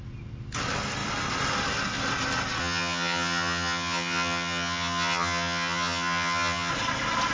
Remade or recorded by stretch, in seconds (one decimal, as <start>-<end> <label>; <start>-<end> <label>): 0.0-2.6 recorded; 2.6-6.7 remade; 6.7-7.3 recorded